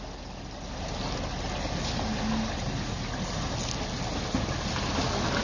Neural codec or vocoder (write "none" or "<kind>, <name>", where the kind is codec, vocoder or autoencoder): none